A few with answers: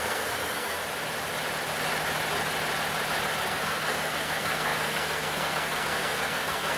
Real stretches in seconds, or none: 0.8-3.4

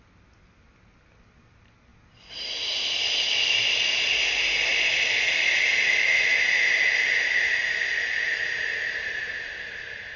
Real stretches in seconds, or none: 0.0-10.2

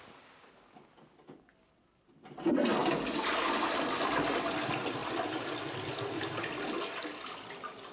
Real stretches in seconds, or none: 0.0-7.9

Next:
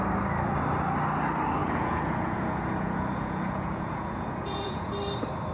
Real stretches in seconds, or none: 0.0-1.6; 4.9-5.5

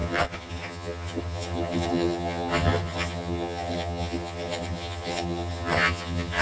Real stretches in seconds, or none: none